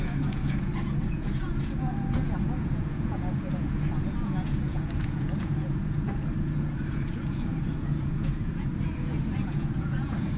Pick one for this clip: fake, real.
fake